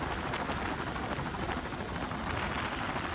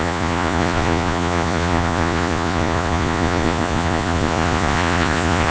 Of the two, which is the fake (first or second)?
second